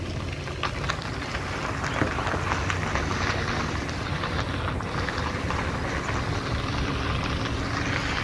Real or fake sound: real